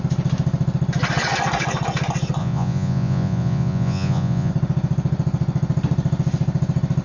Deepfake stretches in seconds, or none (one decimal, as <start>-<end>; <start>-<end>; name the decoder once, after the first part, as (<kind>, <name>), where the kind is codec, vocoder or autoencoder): 2.4-4.5 (vocoder, Vocos)